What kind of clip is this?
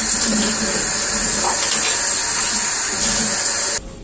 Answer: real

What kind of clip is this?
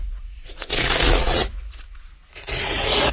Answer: fake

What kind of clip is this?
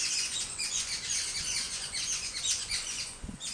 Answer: fake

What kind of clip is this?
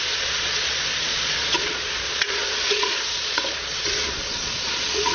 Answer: fake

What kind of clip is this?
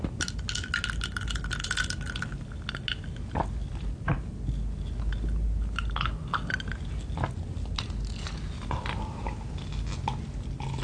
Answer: real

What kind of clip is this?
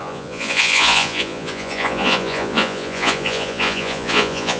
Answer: fake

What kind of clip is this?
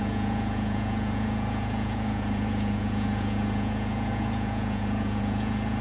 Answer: fake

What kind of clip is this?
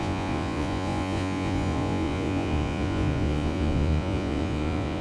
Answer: fake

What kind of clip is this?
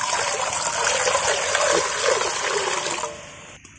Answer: real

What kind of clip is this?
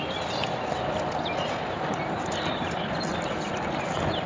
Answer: real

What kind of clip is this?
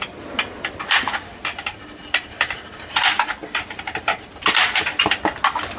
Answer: real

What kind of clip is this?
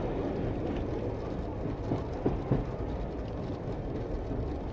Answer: real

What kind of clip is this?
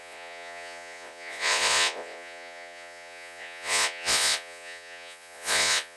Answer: fake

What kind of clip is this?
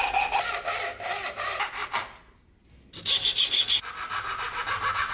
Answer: real